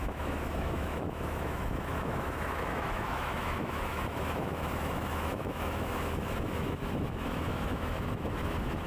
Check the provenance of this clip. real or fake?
fake